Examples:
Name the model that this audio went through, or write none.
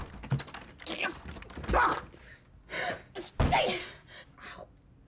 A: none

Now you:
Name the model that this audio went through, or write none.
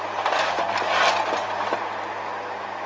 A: none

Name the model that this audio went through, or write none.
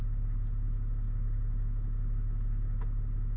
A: none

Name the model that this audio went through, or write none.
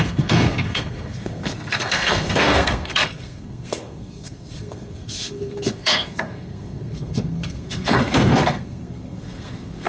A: codec, SNAC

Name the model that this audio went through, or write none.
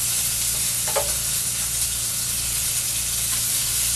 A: none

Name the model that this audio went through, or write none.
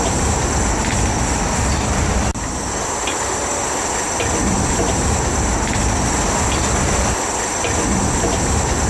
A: none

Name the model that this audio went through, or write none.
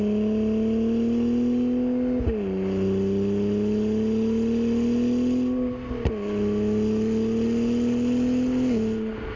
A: none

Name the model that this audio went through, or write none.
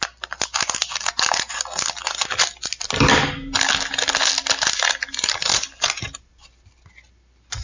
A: none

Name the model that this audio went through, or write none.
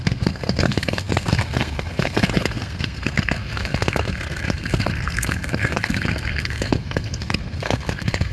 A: codec, SNAC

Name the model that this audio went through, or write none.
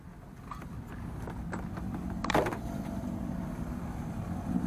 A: none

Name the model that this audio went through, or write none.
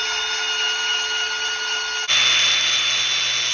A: none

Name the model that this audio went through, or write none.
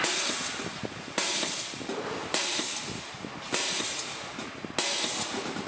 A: none